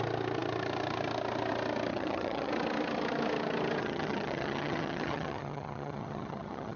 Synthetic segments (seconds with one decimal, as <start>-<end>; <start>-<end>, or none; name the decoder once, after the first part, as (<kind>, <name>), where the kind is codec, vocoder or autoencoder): 1.9-2.5 (vocoder, HiFi-GAN); 3.8-6.8